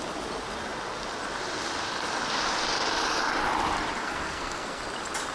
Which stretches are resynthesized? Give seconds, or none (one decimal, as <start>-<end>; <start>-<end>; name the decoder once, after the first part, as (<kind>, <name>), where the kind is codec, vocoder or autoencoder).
4.0-4.8 (codec, SNAC)